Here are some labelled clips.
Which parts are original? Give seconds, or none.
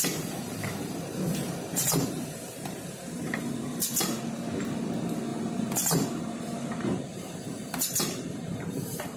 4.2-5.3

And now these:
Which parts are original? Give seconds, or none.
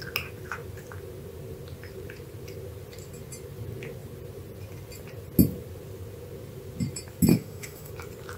0.0-7.3; 7.9-8.4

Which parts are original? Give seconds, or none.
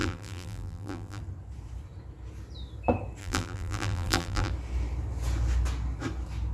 1.2-3.2; 4.5-6.5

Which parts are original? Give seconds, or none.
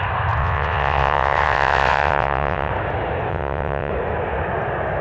0.0-0.4; 2.7-3.3; 3.9-5.0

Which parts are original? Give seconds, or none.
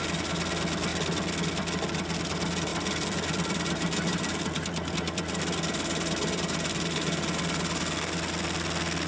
0.0-2.7; 5.4-9.1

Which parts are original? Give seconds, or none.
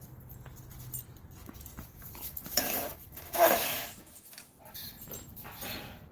0.0-1.4; 4.6-6.1